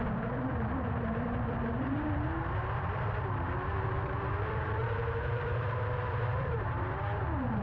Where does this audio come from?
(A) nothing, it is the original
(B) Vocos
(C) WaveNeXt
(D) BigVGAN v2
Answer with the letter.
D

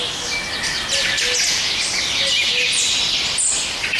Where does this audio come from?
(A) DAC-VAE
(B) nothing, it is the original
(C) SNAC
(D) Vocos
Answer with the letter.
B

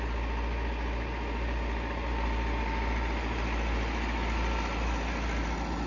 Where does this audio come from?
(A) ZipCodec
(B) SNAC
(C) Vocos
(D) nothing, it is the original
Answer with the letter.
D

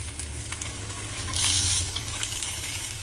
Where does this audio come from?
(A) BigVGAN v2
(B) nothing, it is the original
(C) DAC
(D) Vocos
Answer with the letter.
C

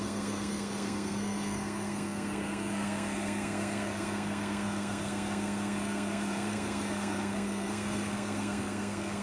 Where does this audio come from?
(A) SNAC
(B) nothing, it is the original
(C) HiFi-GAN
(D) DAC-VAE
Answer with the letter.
A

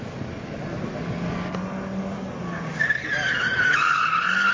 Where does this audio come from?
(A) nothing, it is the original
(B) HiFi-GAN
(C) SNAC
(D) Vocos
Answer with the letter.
A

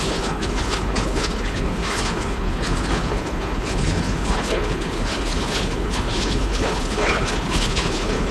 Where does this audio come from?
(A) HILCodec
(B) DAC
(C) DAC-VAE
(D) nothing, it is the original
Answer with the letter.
A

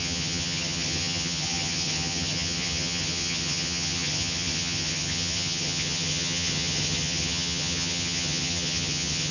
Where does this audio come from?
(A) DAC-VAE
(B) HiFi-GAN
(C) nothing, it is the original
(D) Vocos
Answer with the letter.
B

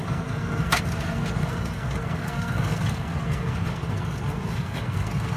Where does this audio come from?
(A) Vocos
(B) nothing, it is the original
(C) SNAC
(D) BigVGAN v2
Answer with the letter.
C